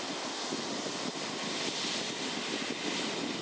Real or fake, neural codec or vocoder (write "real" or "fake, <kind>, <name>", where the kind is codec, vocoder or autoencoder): real